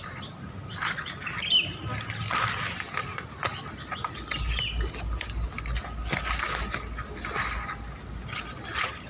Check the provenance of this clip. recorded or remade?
recorded